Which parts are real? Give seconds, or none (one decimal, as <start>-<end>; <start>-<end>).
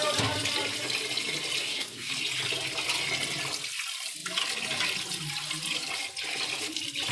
0.0-1.6; 2.1-7.1